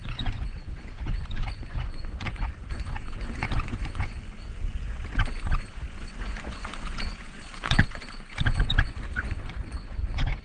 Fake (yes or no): yes